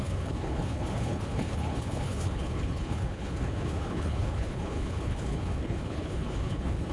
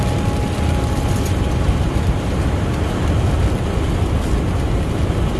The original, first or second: second